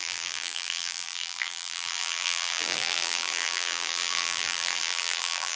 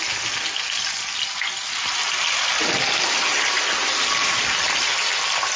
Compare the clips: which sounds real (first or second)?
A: second